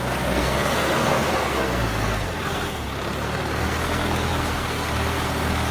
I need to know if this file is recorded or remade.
remade